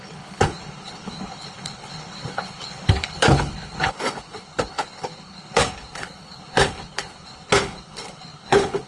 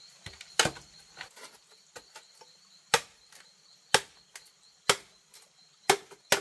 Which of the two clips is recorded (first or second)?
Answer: second